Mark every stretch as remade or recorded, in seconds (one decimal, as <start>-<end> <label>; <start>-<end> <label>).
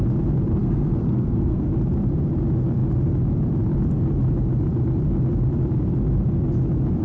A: 0.0-0.6 recorded; 0.6-1.6 remade; 1.6-7.0 recorded